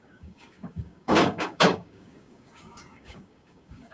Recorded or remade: remade